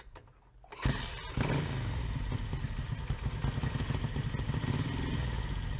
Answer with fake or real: real